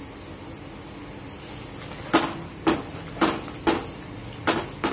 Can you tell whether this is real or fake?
real